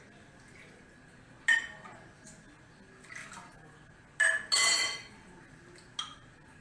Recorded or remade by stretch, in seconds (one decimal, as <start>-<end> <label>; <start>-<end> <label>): 0.0-6.6 recorded